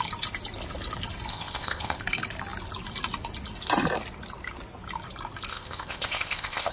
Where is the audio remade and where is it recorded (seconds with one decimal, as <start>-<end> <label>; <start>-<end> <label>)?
0.0-1.3 recorded; 1.3-2.0 remade; 2.0-5.5 recorded; 5.5-6.7 remade